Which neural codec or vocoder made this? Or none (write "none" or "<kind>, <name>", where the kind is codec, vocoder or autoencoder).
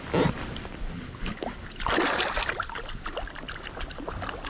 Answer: none